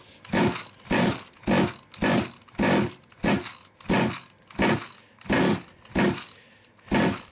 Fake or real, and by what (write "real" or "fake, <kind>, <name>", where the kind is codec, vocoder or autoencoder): real